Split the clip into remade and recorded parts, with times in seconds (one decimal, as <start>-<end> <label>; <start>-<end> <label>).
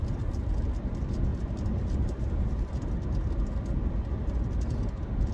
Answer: 0.0-1.3 recorded; 1.3-2.7 remade; 2.7-5.3 recorded